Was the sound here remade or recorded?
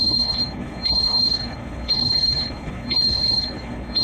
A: remade